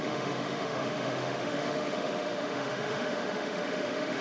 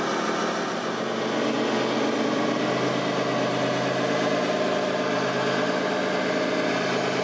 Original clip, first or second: second